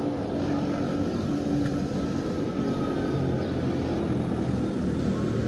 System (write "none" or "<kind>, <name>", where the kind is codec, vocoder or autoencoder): none